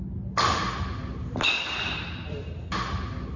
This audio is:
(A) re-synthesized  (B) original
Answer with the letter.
B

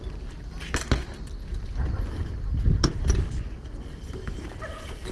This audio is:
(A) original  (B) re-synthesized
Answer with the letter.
A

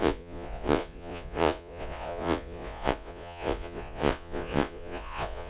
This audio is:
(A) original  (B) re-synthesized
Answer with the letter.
B